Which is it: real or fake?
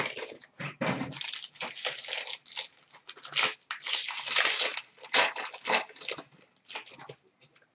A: real